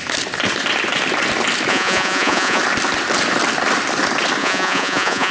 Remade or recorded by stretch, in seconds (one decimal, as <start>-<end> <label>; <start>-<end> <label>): 0.0-1.7 recorded; 1.7-2.6 remade; 2.6-4.4 recorded; 4.4-5.3 remade

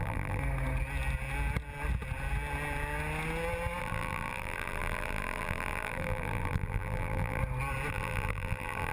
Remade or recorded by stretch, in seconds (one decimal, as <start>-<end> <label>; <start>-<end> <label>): 0.0-0.4 remade; 0.4-3.8 recorded; 3.8-7.4 remade; 7.4-7.9 recorded; 7.9-8.9 remade